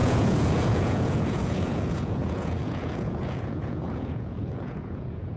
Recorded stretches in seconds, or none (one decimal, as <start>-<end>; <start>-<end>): none